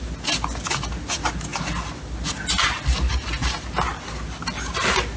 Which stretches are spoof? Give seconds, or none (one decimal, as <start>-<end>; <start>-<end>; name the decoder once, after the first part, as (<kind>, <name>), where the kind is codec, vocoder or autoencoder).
none